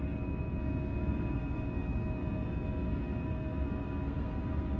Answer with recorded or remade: remade